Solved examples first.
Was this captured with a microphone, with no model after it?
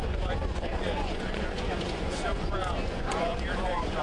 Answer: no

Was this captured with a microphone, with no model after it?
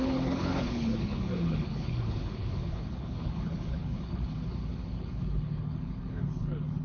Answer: no